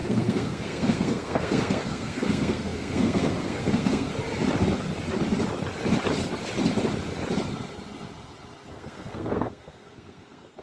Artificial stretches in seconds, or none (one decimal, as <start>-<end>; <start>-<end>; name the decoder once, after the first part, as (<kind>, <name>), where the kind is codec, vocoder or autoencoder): 0.0-4.1 (codec, SNAC); 8.7-10.6

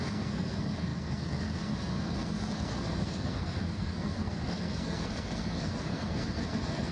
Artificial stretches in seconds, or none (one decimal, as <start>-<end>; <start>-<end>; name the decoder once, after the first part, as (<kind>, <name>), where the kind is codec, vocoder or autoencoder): 0.0-6.9 (codec, SNAC)

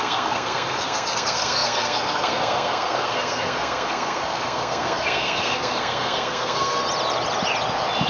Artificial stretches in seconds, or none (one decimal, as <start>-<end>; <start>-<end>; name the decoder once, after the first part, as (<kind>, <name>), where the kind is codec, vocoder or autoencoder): 0.0-6.8 (codec, SNAC)

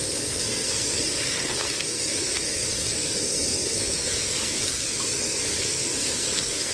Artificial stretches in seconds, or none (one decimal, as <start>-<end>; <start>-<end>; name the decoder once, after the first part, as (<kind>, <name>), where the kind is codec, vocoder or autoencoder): 0.0-6.7 (codec, SNAC)